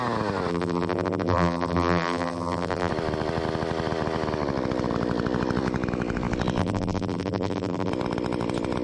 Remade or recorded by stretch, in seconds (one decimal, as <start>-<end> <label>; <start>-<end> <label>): 0.0-0.5 recorded; 0.5-2.9 remade; 2.9-6.6 recorded; 6.6-7.9 remade; 7.9-8.8 recorded